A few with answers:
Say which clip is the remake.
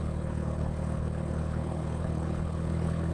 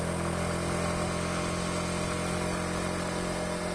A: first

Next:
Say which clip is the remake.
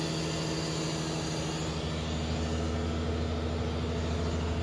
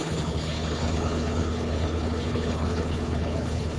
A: second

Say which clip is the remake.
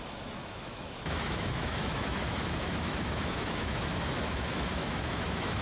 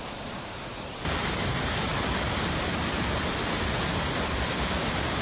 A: first